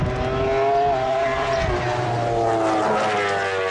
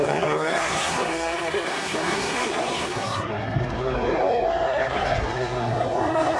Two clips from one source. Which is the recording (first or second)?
first